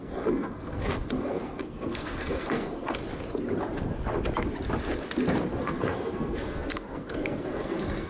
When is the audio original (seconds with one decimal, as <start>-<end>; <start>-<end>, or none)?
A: 3.0-5.6